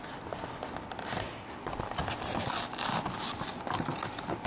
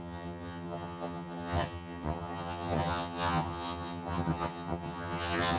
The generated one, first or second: second